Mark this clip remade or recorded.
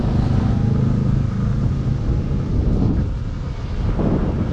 recorded